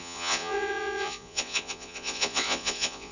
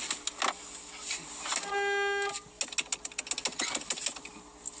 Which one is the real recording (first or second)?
second